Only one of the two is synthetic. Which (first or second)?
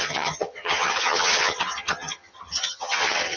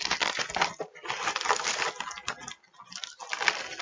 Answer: first